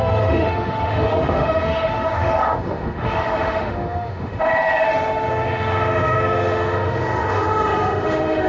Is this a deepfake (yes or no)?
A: yes